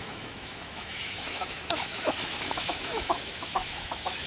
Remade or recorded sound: remade